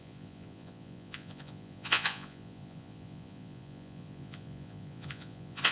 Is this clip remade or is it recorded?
remade